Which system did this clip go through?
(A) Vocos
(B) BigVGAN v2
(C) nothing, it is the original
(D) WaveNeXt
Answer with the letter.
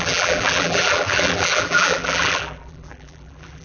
B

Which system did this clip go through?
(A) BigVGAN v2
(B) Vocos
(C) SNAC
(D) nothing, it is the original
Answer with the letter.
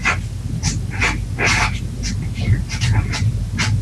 A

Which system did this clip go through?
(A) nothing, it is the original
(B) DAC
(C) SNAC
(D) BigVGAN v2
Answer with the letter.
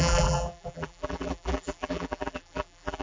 D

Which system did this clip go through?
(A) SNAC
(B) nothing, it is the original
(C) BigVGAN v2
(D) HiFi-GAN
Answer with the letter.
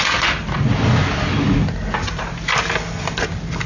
B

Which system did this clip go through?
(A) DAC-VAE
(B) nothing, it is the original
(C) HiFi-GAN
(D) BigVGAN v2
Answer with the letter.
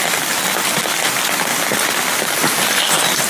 B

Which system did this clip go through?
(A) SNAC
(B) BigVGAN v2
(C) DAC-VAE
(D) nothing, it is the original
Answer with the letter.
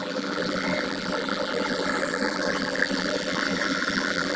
B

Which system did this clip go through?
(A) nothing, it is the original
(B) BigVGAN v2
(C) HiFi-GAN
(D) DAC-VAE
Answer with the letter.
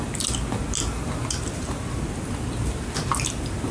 A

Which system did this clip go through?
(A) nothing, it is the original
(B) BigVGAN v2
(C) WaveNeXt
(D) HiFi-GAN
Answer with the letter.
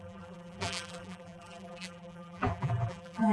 B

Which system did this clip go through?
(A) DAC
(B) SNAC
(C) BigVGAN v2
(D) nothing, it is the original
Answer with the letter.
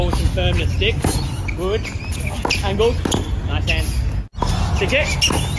D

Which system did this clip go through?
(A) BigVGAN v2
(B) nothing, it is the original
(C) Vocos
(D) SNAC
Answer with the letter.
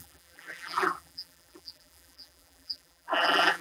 A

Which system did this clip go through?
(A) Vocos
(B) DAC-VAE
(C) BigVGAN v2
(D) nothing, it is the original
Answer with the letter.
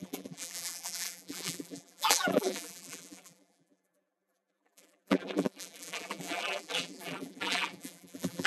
C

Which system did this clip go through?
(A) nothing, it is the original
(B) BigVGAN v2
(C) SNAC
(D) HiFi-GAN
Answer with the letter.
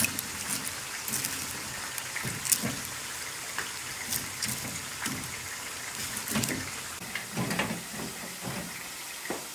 A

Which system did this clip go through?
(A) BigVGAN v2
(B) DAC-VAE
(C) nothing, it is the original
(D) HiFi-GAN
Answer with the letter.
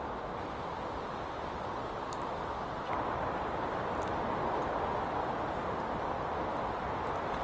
C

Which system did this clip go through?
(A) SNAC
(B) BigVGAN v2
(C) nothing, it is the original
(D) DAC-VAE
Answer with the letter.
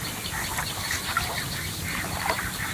C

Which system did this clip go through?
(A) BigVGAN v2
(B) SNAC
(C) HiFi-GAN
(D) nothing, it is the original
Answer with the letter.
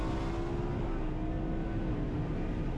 D